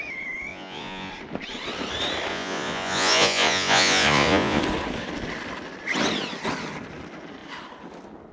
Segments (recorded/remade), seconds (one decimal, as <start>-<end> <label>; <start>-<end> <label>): 0.0-0.5 recorded; 0.5-1.1 remade; 1.1-2.3 recorded; 2.3-4.6 remade; 4.6-8.3 recorded